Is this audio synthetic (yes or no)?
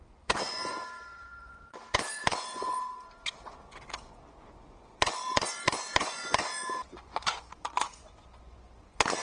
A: yes